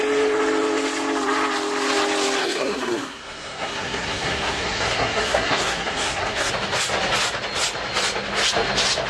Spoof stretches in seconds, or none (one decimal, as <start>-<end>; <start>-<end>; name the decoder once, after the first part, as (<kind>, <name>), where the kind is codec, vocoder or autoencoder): 2.4-6.5 (codec, SNAC)